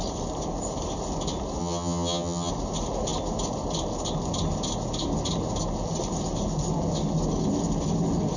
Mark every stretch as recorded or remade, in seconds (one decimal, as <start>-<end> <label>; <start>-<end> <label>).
0.0-1.6 recorded; 1.6-2.5 remade; 2.5-8.4 recorded